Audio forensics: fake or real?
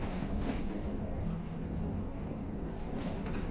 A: fake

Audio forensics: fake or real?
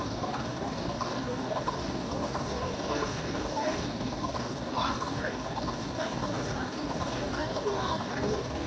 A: fake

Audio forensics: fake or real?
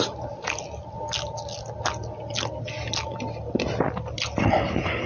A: real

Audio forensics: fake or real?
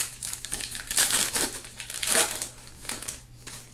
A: fake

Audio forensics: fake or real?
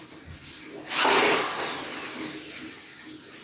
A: real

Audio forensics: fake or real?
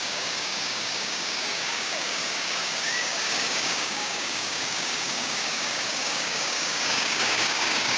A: fake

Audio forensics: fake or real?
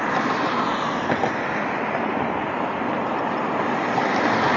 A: real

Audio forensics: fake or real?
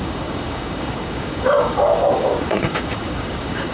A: fake